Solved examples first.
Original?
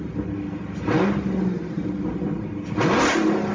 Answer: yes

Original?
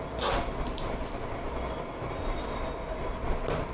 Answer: yes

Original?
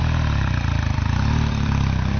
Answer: no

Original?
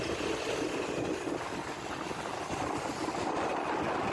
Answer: yes